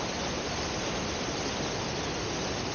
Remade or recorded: recorded